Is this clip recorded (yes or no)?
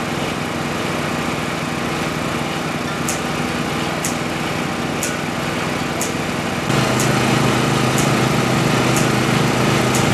yes